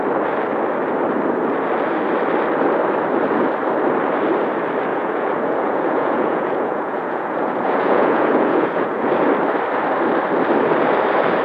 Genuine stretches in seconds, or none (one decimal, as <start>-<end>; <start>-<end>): 0.0-4.9; 9.1-11.4